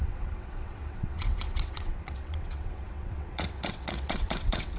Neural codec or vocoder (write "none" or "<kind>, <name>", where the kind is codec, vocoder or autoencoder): vocoder, WaveNeXt